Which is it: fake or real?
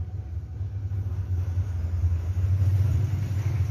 real